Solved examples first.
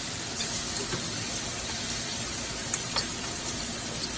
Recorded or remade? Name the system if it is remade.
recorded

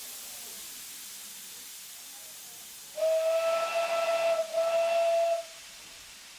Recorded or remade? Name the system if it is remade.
recorded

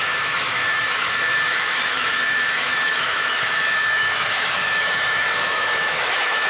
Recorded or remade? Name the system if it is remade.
remade, autoencoder, DAC-VAE